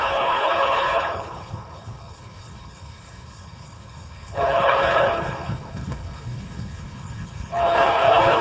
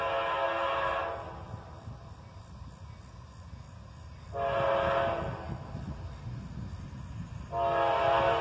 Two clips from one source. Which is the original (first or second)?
second